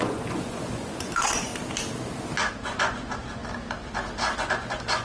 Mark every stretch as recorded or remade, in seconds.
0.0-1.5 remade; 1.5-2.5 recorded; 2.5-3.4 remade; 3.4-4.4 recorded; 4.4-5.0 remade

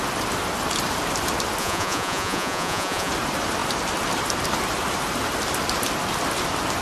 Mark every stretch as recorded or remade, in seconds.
0.0-1.6 recorded; 1.6-3.1 remade; 3.1-6.8 recorded